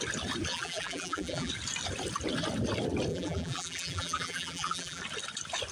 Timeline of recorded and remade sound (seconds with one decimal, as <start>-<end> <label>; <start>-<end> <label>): 0.0-0.5 recorded; 0.5-1.5 remade; 1.5-3.1 recorded; 3.1-5.0 remade; 5.0-5.7 recorded